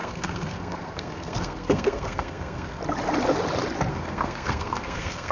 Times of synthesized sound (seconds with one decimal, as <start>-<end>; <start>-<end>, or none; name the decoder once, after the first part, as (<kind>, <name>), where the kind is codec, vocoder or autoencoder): 0.0-2.8 (codec, SNAC); 3.9-5.3